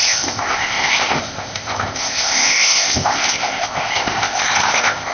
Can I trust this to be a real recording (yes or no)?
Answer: no